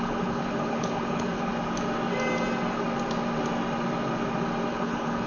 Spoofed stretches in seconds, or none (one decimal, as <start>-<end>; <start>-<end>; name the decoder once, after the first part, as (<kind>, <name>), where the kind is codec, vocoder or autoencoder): 0.0-1.5 (codec, HILCodec); 4.7-5.3